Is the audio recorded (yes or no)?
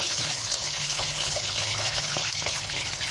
no